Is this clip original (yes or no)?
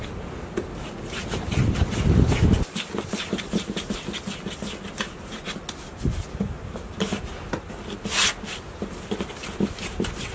yes